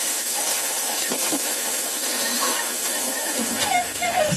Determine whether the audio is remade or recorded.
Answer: remade